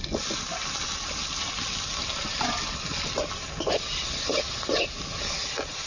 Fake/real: real